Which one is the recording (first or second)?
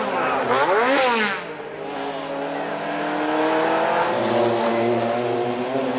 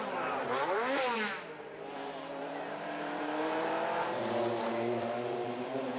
first